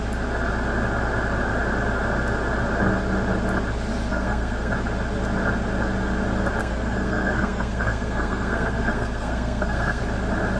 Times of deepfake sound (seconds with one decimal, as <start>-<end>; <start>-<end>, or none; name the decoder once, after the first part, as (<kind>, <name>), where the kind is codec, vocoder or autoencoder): 4.1-4.7 (codec, SNAC); 6.6-10.0